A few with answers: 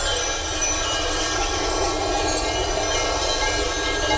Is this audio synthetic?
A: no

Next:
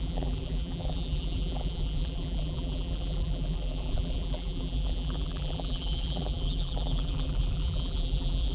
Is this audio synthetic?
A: yes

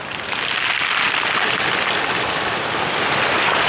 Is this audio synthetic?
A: no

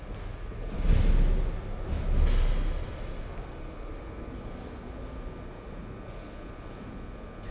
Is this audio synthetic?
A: no